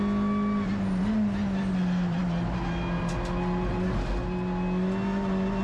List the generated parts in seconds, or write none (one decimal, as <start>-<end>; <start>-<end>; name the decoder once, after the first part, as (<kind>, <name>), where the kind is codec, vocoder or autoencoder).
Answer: none